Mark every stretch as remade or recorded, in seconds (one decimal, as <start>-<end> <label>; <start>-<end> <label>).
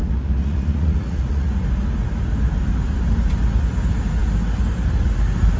0.0-1.5 remade; 1.5-5.6 recorded